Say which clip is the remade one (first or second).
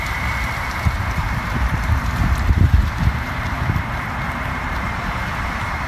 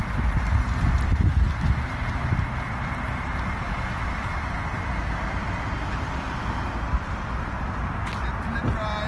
first